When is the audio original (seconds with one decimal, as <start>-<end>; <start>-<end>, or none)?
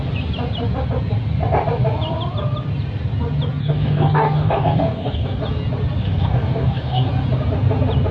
0.0-3.6; 5.4-6.0; 7.1-8.1